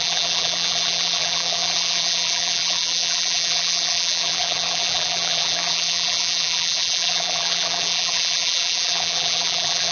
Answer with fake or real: fake